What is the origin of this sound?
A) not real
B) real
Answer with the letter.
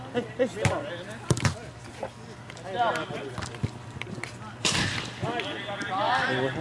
B